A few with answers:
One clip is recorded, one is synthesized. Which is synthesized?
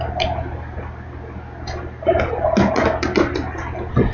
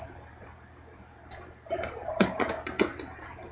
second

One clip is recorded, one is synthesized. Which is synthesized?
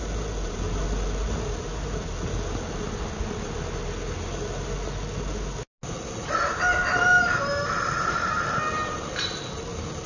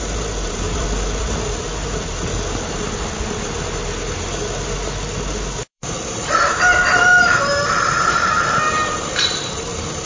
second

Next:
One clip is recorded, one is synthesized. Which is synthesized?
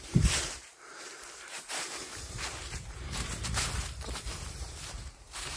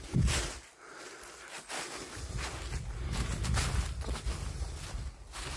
first